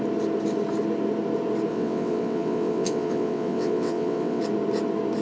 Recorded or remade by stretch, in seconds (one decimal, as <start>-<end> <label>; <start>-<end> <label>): 0.0-1.7 recorded; 1.7-4.4 remade; 4.4-5.2 recorded

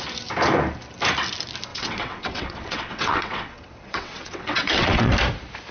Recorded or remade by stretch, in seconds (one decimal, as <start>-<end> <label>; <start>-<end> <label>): 0.0-1.7 recorded; 1.7-5.1 remade; 5.1-5.7 recorded

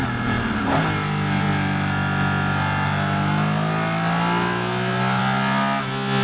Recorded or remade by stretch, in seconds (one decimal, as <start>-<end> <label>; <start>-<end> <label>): 0.0-6.2 recorded